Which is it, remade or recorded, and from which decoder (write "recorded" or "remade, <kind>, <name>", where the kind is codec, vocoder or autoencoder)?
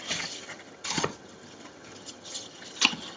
remade, vocoder, HiFi-GAN